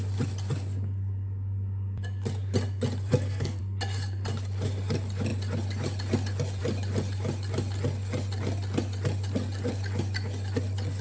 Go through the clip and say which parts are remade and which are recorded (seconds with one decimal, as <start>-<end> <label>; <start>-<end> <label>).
0.0-3.1 recorded; 3.1-3.6 remade; 3.6-11.0 recorded